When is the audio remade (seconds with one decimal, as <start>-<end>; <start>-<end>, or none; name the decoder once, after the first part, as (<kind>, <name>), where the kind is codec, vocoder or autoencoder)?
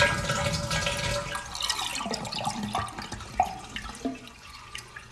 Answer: 4.1-5.1 (vocoder, Vocos)